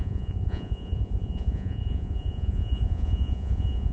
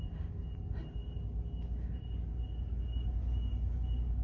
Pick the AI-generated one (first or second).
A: first